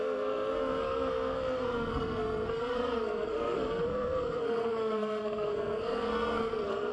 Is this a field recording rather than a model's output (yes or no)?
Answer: no